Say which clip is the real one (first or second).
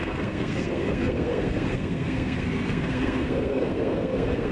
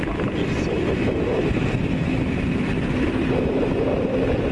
second